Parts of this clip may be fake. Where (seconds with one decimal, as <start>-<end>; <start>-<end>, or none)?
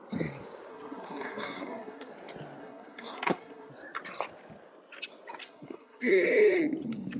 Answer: 0.7-2.1; 2.6-3.7; 5.4-6.6